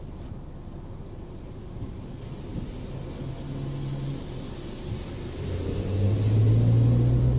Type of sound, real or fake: real